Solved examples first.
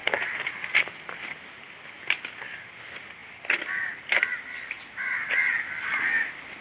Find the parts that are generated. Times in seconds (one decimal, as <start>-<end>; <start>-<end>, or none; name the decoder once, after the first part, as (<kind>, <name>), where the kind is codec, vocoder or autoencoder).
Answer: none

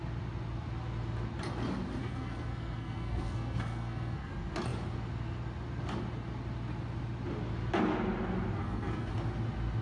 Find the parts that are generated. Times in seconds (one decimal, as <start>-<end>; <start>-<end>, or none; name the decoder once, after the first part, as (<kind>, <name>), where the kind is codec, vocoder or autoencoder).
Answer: 2.0-4.3 (codec, SNAC); 8.6-9.1

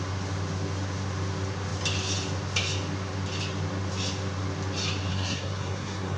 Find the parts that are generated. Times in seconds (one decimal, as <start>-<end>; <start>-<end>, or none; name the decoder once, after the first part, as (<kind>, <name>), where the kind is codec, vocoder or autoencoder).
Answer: 5.1-6.2 (codec, SNAC)

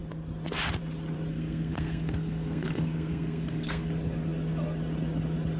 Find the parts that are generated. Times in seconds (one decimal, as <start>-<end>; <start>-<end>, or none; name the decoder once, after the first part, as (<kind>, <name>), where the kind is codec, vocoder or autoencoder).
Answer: 1.3-3.9 (codec, SNAC)